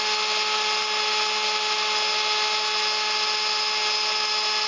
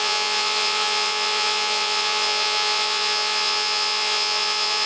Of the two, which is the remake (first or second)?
second